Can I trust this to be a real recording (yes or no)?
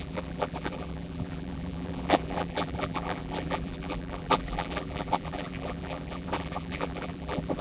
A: no